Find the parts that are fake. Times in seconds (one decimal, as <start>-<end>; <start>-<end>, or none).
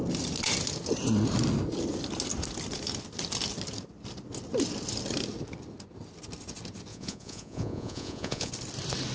6.9-8.5